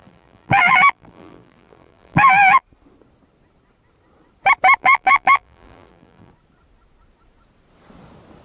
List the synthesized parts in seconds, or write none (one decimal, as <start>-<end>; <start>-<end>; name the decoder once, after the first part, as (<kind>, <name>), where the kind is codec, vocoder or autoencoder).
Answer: 0.0-2.6 (vocoder, BigVGAN v2); 4.8-6.3